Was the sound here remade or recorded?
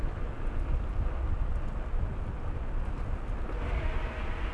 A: recorded